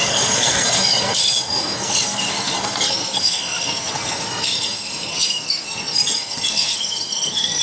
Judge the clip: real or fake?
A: fake